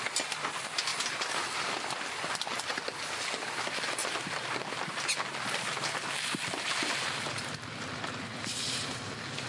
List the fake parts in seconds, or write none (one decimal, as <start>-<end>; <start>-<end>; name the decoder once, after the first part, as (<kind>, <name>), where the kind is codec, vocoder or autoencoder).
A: 0.9-1.6 (vocoder, BigVGAN v2); 4.0-9.0